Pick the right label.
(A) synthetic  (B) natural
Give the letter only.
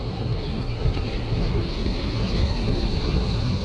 A